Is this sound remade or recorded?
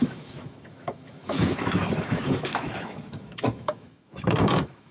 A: remade